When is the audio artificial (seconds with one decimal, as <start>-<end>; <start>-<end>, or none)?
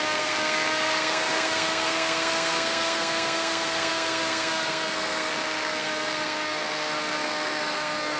0.0-8.2